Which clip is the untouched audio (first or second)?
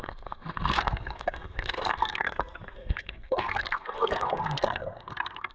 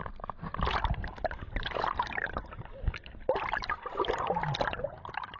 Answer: second